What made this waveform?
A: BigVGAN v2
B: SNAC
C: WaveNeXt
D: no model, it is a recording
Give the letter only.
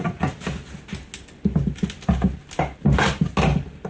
D